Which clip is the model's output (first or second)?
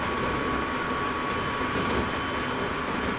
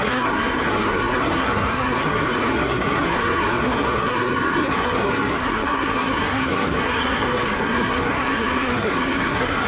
second